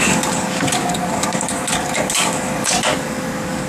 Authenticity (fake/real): fake